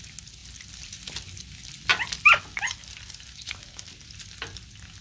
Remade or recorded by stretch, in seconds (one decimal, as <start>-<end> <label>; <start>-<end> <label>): 0.0-5.0 recorded